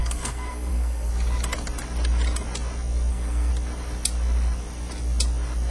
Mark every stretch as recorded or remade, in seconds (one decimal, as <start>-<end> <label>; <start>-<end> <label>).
0.0-1.1 remade; 1.1-3.1 recorded; 3.1-3.5 remade; 3.5-5.7 recorded